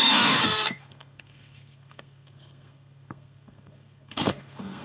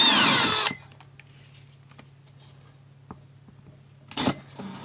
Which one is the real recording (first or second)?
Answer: second